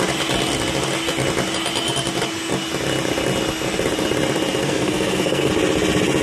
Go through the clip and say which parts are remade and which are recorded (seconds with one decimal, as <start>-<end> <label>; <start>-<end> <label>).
0.0-4.6 recorded; 4.6-5.5 remade; 5.5-6.2 recorded